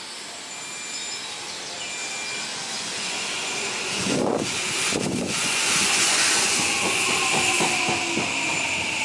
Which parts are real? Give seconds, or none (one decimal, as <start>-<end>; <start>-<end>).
0.0-2.5; 7.1-9.0